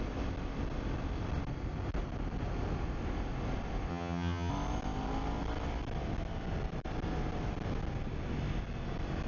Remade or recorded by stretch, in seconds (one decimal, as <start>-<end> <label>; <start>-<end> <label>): 0.0-3.9 recorded; 3.9-4.5 remade; 4.5-9.3 recorded